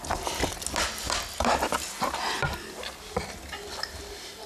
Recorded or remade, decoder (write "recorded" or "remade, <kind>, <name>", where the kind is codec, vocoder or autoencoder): recorded